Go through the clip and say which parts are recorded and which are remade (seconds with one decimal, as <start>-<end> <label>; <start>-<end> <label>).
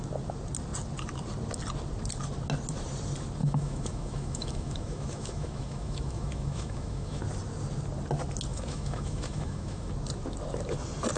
0.0-3.4 recorded; 3.4-7.2 remade; 7.2-8.5 recorded; 8.5-9.9 remade; 9.9-11.2 recorded